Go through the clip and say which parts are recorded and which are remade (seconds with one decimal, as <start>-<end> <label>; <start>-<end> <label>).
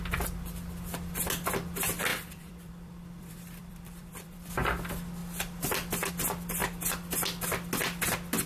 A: 0.0-2.1 recorded; 2.1-4.5 remade; 4.5-8.5 recorded